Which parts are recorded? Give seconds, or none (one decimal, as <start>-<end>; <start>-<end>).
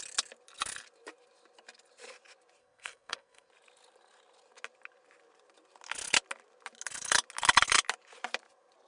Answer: 0.0-2.6; 3.5-8.9